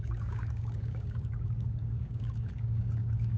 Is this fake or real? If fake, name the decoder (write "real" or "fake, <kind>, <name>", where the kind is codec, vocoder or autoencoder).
fake, codec, DAC